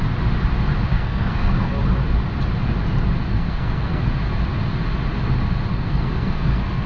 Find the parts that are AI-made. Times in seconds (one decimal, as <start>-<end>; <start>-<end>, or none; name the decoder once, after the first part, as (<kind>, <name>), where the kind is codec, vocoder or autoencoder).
0.9-1.7 (codec, SNAC); 3.3-4.0; 5.7-6.9

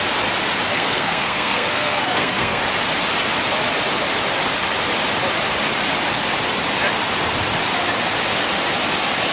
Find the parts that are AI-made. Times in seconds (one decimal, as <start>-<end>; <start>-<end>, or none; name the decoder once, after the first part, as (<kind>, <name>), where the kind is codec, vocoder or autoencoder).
0.7-2.6 (codec, SNAC)

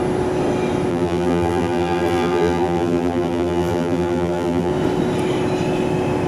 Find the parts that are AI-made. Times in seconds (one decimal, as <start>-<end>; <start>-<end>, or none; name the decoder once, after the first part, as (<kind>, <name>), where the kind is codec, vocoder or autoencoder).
0.9-4.7 (vocoder, BigVGAN v2)

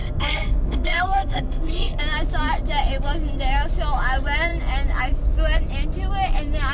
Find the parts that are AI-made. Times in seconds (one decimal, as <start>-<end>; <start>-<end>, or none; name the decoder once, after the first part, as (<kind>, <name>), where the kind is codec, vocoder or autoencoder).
0.0-2.0 (codec, SNAC)

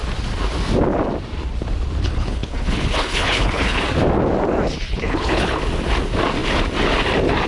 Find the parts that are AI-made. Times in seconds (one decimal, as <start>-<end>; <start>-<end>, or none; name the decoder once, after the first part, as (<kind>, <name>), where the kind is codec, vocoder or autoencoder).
2.0-3.8 (codec, HILCodec); 4.9-5.6